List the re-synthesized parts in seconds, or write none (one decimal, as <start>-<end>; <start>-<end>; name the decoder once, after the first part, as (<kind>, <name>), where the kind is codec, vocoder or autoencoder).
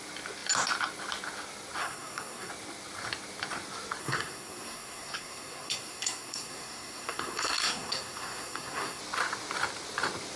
1.8-2.5 (codec, SNAC); 4.0-9.0